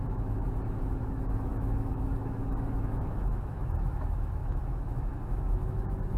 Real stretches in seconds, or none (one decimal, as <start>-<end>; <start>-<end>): none